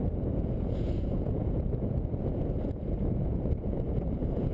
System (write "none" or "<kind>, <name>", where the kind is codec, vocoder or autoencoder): vocoder, Vocos